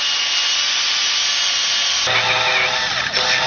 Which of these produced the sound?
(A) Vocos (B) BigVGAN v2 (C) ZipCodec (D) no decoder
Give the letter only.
D